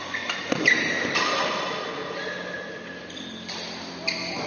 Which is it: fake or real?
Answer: real